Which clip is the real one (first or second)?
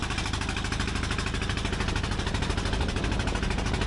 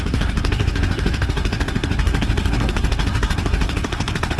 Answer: first